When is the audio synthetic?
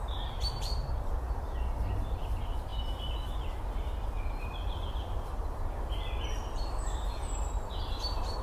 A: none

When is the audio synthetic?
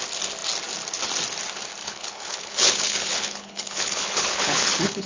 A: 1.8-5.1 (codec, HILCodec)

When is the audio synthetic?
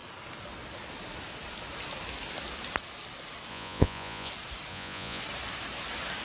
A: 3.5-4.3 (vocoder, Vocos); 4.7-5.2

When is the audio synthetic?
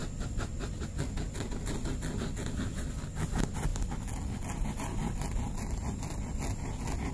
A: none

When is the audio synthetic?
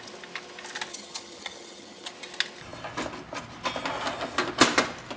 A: 0.9-2.1 (vocoder, HiFi-GAN)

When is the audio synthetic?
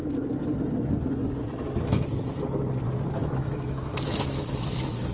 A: 3.2-4.5 (autoencoder, DAC-VAE)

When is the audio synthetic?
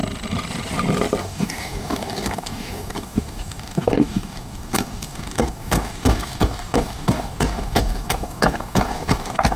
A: 1.2-9.6 (codec, DAC)